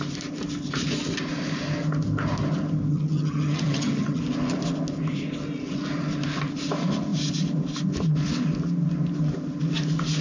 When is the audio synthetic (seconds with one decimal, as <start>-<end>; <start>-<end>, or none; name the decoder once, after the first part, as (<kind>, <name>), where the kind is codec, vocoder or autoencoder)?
2.9-4.2 (vocoder, HiFi-GAN)